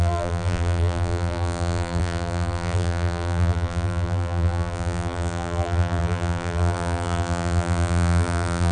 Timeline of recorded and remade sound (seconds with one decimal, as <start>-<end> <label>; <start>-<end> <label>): 0.0-8.7 remade